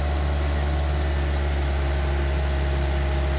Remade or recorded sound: recorded